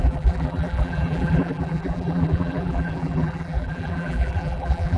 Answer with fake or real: fake